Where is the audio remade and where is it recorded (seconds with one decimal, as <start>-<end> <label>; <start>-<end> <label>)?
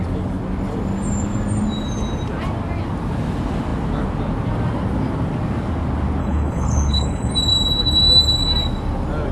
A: 0.0-6.2 recorded; 6.2-7.3 remade; 7.3-9.3 recorded